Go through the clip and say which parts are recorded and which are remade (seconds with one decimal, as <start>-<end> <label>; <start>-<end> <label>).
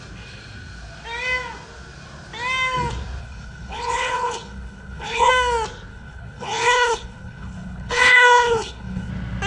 0.0-3.2 recorded; 3.2-5.3 remade; 5.3-5.9 recorded; 5.9-9.1 remade; 9.1-9.5 recorded